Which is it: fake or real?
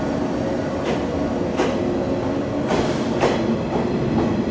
real